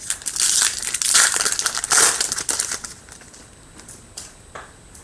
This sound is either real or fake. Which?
real